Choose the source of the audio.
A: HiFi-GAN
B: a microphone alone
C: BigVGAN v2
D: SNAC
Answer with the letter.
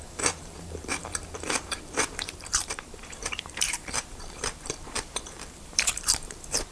C